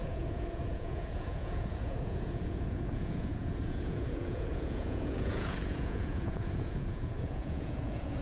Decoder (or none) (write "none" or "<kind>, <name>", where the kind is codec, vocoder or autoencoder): vocoder, Vocos